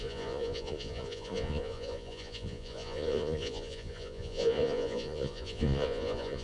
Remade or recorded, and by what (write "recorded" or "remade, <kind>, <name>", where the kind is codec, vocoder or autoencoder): remade, vocoder, Vocos